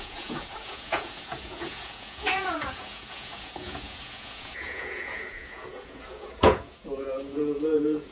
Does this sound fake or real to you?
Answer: fake